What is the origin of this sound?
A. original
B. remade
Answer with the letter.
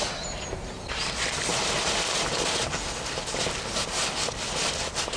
A